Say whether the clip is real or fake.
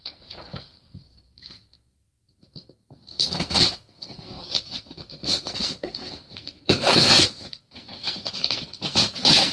fake